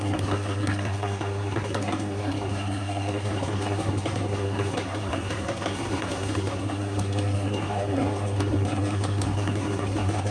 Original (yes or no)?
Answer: no